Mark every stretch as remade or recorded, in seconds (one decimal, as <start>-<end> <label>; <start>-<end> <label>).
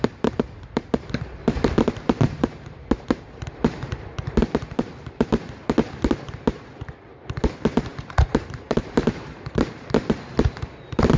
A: 0.0-5.6 remade; 5.6-7.0 recorded; 7.0-11.2 remade